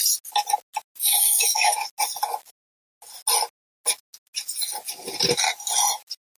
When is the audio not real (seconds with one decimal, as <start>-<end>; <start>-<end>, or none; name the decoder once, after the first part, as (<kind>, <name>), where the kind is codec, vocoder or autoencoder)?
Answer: 1.0-1.7 (autoencoder, DAC-VAE)